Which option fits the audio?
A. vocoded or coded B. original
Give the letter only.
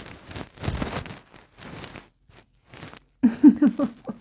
B